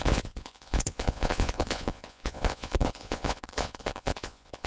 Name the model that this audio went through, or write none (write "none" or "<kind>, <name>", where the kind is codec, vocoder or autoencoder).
vocoder, Vocos